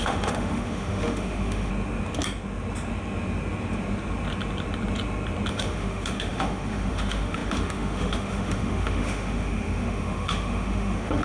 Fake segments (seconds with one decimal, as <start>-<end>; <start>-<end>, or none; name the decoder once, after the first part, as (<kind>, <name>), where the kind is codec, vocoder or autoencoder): 0.0-1.7 (autoencoder, DAC-VAE); 5.5-11.2